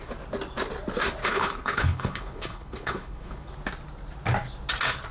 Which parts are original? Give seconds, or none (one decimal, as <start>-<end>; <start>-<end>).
0.0-1.2; 3.5-5.1